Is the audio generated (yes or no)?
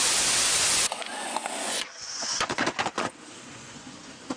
yes